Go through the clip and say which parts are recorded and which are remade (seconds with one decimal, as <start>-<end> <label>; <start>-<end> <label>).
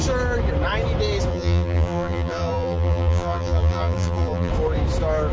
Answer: 0.0-1.3 recorded; 1.3-4.5 remade; 4.5-5.3 recorded